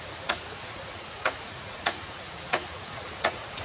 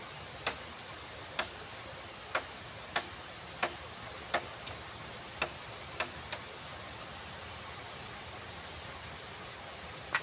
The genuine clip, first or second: second